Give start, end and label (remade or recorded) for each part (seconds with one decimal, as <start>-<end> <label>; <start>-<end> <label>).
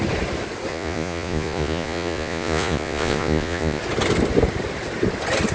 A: 0.0-0.7 recorded; 0.7-3.8 remade; 3.8-5.5 recorded